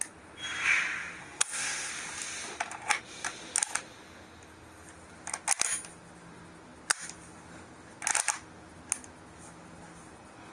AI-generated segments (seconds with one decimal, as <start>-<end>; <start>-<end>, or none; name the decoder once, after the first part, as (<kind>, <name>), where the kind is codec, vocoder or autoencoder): 1.2-1.9 (codec, SNAC)